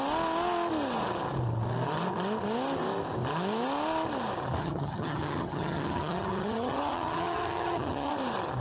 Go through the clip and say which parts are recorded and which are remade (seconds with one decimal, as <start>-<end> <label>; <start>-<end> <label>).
0.0-4.6 recorded; 4.6-8.1 remade; 8.1-8.6 recorded